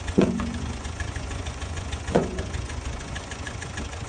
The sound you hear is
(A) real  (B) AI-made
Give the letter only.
B